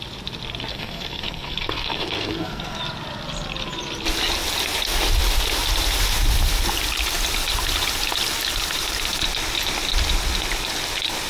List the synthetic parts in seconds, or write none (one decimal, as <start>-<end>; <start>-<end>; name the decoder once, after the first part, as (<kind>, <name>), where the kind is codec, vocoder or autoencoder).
0.7-2.8 (codec, SNAC)